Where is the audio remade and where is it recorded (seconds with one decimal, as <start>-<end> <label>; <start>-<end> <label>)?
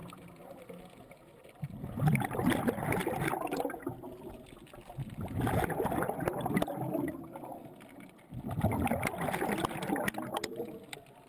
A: 0.0-1.0 remade; 1.0-3.0 recorded; 3.0-6.7 remade; 6.7-11.3 recorded